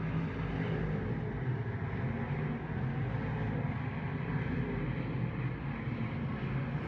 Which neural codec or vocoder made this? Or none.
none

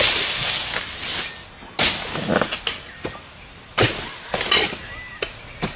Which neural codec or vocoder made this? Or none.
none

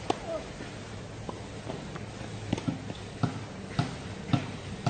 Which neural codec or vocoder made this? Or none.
none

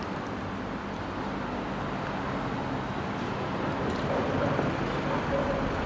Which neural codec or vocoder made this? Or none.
none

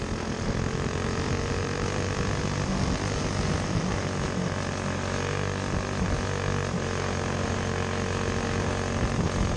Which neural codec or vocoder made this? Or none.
none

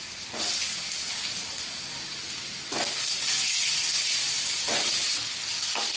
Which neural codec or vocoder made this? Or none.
none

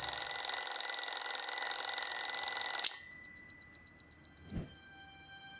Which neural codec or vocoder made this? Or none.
none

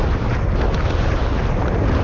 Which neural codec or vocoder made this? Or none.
none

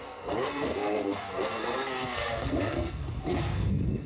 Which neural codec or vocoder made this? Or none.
codec, SNAC